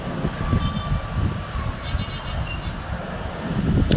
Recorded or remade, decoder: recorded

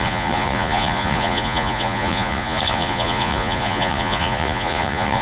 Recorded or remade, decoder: remade, vocoder, Vocos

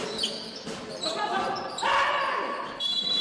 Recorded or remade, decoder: remade, vocoder, BigVGAN v2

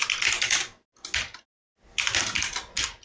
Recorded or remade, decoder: recorded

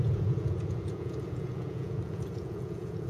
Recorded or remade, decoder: remade, vocoder, Vocos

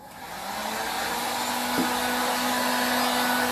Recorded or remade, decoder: recorded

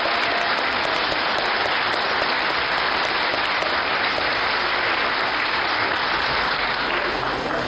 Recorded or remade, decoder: recorded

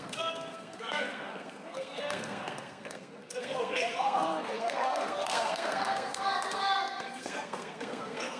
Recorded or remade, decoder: remade, codec, SNAC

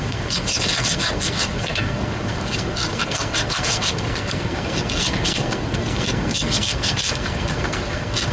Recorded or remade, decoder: remade, codec, SNAC